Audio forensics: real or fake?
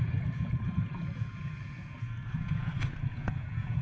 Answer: fake